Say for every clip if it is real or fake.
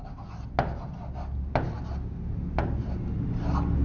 real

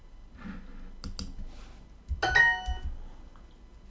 real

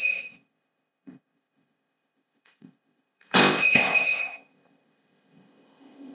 fake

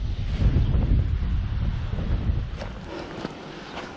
real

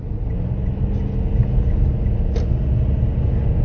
real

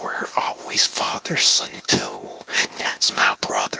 fake